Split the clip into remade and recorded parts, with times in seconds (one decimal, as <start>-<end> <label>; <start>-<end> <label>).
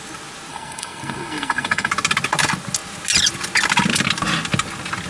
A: 0.0-0.5 recorded; 0.5-1.9 remade; 1.9-5.1 recorded